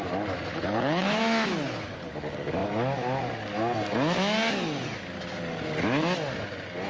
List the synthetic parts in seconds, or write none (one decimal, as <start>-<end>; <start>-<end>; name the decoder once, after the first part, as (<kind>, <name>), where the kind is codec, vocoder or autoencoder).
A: 0.5-1.2 (codec, HILCodec)